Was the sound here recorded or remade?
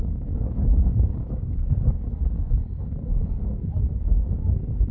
recorded